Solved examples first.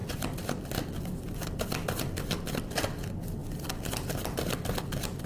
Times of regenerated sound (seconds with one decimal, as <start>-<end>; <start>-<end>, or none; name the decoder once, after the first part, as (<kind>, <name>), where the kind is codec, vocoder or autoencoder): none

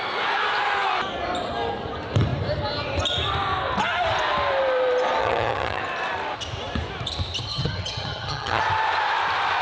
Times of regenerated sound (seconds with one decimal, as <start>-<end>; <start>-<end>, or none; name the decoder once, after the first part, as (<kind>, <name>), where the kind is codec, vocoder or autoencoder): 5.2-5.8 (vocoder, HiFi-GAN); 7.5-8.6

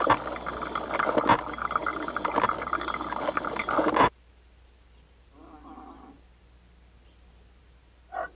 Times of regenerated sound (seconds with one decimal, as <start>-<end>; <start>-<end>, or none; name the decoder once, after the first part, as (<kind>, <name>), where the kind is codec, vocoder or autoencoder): 3.6-7.6 (vocoder, BigVGAN v2)